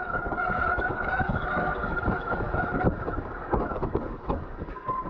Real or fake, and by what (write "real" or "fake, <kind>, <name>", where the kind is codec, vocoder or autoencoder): fake, codec, DAC